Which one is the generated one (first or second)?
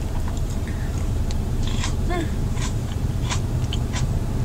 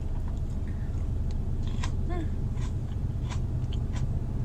first